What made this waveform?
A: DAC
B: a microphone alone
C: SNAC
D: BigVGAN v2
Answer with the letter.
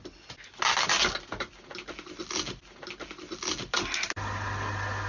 B